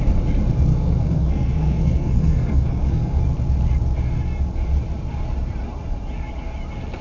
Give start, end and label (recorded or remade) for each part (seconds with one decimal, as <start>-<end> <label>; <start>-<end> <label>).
0.0-0.7 recorded; 0.7-3.2 remade; 3.2-7.0 recorded